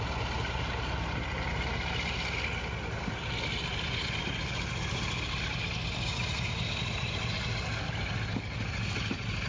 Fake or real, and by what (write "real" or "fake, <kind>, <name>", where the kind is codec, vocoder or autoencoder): real